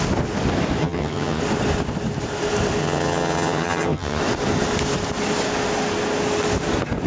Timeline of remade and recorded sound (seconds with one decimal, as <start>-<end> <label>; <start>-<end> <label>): 0.0-0.8 recorded; 0.8-1.4 remade; 1.4-2.8 recorded; 2.8-4.2 remade; 4.2-7.1 recorded